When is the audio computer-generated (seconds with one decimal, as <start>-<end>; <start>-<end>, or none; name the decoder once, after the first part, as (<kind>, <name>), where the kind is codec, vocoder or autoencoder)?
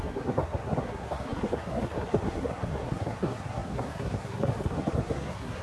0.0-5.6 (codec, SNAC)